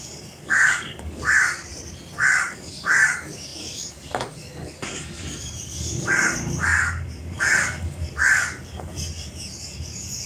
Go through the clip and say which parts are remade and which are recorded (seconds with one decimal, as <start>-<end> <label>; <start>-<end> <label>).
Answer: 0.0-1.7 remade; 1.7-2.3 recorded; 2.3-10.3 remade

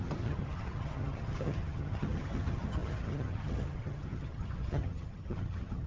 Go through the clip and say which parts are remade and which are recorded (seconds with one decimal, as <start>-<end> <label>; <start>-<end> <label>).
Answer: 0.0-5.9 remade

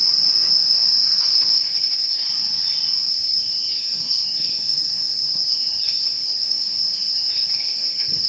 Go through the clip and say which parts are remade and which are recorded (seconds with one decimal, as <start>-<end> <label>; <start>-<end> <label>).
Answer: 0.0-1.2 recorded; 1.2-2.3 remade; 2.3-3.1 recorded; 3.1-8.3 remade

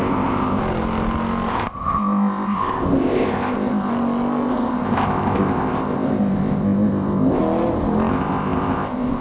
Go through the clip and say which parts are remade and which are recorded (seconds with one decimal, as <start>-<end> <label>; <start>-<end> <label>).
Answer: 0.0-0.6 remade; 0.6-1.5 recorded; 1.5-3.9 remade; 3.9-4.5 recorded; 4.5-7.4 remade; 7.4-8.1 recorded; 8.1-9.2 remade

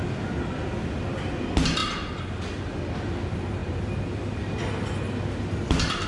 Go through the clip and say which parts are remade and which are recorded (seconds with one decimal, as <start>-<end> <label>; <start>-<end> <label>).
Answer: 0.0-6.1 recorded